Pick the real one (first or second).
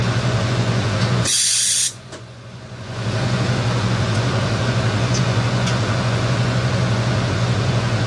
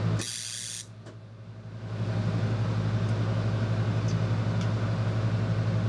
second